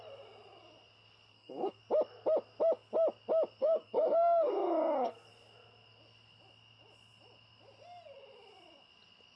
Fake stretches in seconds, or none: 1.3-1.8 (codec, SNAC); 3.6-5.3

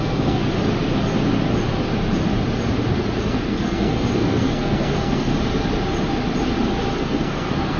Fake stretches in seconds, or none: 0.0-0.4 (codec, SNAC); 3.2-5.3; 7.0-7.8

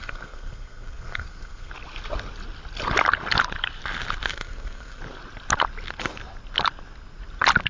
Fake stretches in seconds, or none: 0.0-1.7 (codec, SNAC); 4.3-5.0

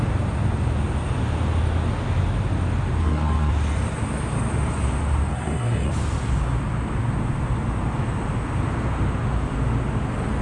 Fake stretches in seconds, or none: 3.0-3.5 (codec, SNAC); 5.3-5.9